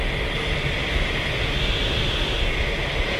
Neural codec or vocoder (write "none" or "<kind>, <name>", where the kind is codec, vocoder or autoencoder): none